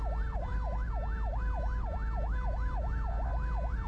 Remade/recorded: recorded